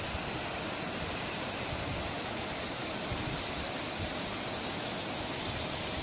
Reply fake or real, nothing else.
real